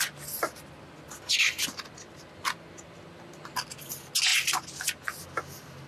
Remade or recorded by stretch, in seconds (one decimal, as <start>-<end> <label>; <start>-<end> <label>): 0.0-5.9 recorded